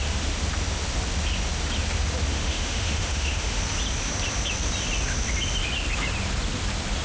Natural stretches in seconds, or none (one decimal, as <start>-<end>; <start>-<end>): 0.0-2.3; 3.6-7.0